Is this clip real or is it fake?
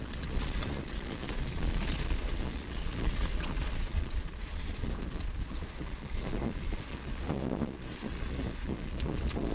fake